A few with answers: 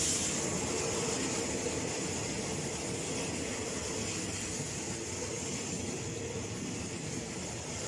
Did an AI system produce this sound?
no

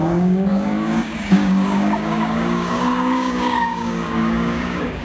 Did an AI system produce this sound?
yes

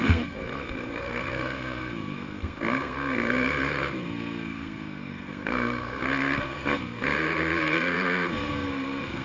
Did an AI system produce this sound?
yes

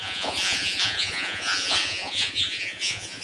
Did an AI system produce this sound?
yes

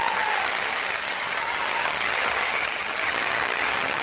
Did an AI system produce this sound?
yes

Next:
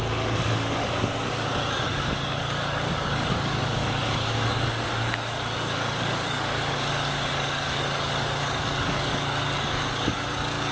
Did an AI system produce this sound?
yes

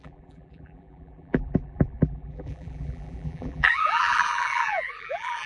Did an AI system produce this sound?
yes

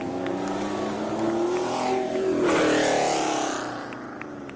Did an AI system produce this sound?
no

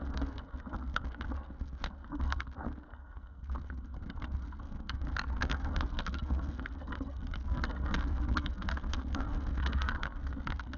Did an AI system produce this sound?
yes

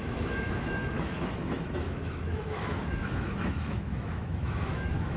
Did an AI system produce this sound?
yes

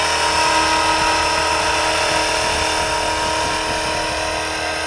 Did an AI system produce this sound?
no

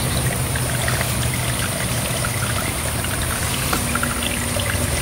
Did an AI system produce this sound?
no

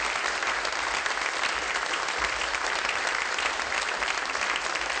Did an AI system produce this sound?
yes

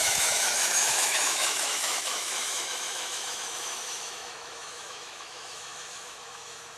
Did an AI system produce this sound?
yes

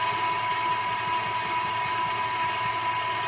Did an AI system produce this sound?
no